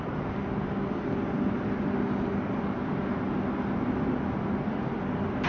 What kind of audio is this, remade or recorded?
recorded